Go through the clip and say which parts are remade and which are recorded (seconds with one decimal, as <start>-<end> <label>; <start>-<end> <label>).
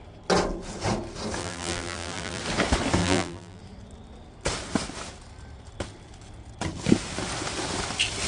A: 0.0-1.4 recorded; 1.4-2.4 remade; 2.4-3.0 recorded; 3.0-3.6 remade; 3.6-8.3 recorded